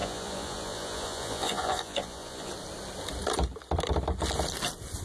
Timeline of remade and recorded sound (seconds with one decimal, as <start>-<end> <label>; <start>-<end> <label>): 0.0-2.5 remade; 2.5-5.0 recorded